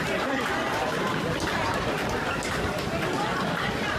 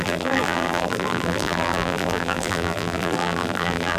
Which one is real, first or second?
first